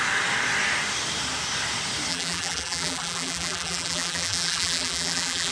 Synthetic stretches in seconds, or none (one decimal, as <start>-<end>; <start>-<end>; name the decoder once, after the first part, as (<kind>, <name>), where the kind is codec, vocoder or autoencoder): 2.1-5.5 (vocoder, BigVGAN v2)